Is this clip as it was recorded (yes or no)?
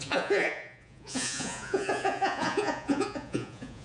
no